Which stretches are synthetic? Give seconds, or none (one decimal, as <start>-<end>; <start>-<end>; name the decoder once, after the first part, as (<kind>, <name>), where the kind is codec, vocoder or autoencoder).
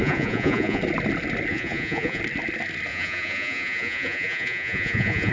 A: 0.0-0.8 (vocoder, Vocos); 1.5-2.2; 2.9-5.3